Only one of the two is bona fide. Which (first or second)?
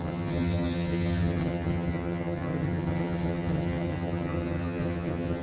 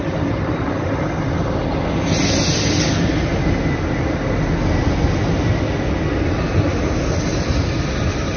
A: second